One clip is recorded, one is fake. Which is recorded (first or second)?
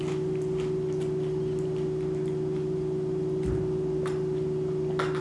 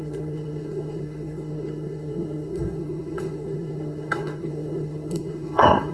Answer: first